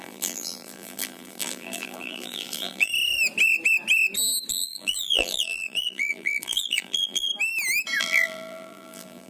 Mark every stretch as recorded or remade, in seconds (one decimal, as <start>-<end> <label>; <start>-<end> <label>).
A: 0.0-2.9 remade; 2.9-4.5 recorded; 4.5-7.3 remade; 7.3-8.0 recorded; 8.0-9.3 remade